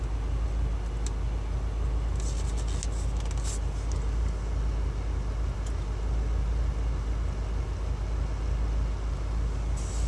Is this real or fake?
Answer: real